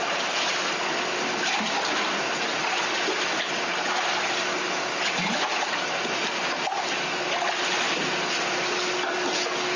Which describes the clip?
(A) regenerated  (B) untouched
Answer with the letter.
B